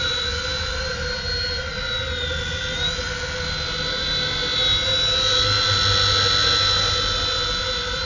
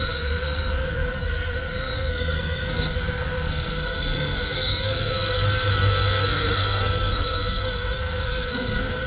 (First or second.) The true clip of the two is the first